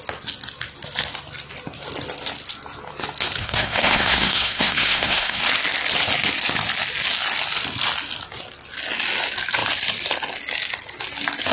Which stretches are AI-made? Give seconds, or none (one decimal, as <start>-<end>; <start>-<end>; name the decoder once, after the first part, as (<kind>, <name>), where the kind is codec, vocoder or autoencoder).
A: 3.4-5.4 (codec, SNAC)